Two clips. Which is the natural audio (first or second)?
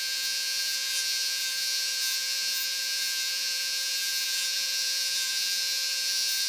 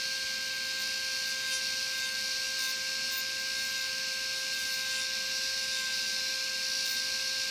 second